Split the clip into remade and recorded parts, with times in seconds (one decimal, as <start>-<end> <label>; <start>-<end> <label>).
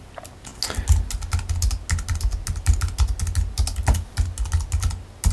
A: 0.0-5.3 recorded